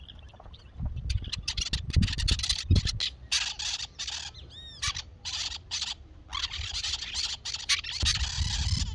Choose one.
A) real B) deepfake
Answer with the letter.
A